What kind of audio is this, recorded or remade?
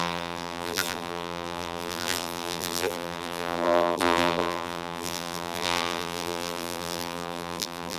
remade